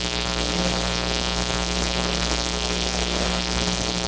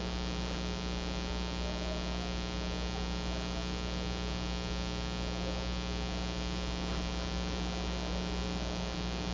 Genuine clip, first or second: second